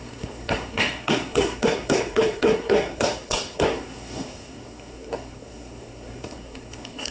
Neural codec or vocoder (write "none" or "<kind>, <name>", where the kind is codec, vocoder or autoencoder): codec, SNAC